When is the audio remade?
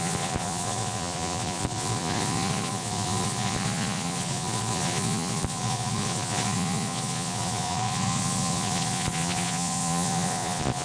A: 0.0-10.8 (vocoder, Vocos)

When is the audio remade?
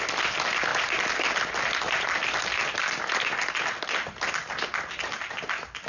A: none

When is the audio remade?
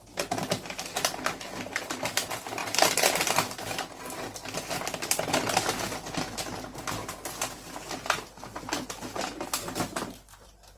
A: 2.6-3.6 (vocoder, BigVGAN v2)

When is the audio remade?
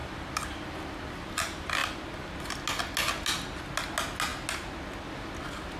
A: none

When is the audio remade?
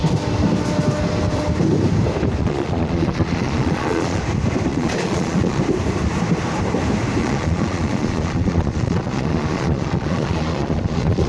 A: 2.4-4.2 (vocoder, Vocos); 4.7-5.6; 7.2-11.3